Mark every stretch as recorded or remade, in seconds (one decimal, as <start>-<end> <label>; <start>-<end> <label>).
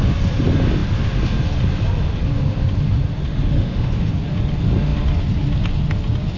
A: 0.0-3.3 recorded; 3.3-4.1 remade; 4.1-6.4 recorded